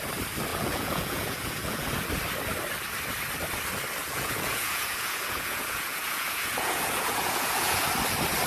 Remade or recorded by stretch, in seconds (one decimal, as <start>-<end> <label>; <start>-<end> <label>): 0.0-0.5 recorded; 0.5-1.9 remade; 1.9-4.0 recorded; 4.0-7.9 remade; 7.9-8.5 recorded

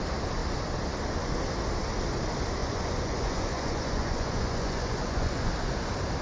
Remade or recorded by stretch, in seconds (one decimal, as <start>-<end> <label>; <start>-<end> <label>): 0.0-2.6 recorded; 2.6-5.5 remade; 5.5-6.2 recorded

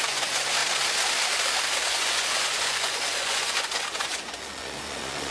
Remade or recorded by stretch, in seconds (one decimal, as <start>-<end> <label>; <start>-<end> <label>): 0.0-0.6 remade; 0.6-1.9 recorded; 1.9-5.3 remade

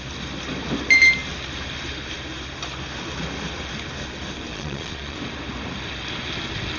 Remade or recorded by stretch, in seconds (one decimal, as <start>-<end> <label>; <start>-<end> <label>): 0.0-4.5 recorded; 4.5-5.2 remade; 5.2-6.8 recorded

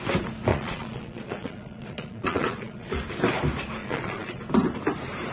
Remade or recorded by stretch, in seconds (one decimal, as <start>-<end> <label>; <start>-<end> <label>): 0.0-0.5 recorded; 0.5-2.9 remade; 2.9-3.8 recorded; 3.8-4.4 remade; 4.4-5.3 recorded

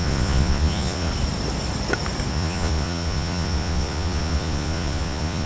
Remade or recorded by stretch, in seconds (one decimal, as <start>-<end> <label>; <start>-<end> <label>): 0.0-1.1 remade; 1.1-2.3 recorded; 2.3-5.5 remade

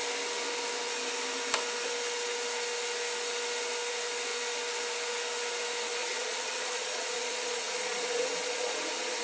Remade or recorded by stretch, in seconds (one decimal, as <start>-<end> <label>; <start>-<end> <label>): 0.0-6.0 recorded; 6.0-9.2 remade

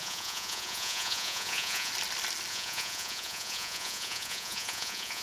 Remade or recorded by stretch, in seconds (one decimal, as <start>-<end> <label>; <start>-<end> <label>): 0.0-1.9 remade; 1.9-2.5 recorded; 2.5-5.2 remade